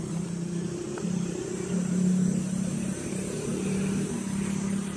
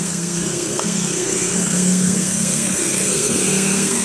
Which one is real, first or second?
first